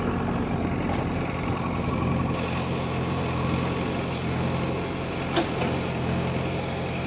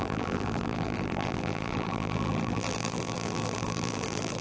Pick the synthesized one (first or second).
second